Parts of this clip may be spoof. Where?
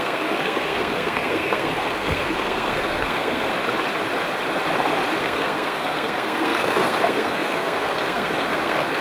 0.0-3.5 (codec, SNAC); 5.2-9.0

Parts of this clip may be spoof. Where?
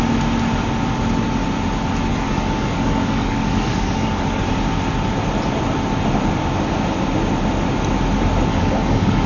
2.1-4.4 (codec, DAC); 8.5-9.3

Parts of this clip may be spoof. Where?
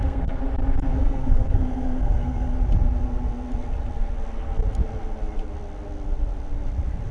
0.0-0.4 (codec, SNAC); 1.0-2.5